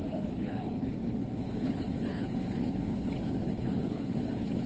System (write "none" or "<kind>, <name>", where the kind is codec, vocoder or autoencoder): codec, HILCodec